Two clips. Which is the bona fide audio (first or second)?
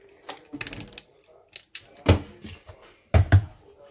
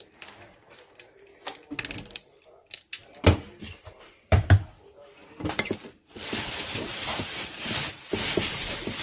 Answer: first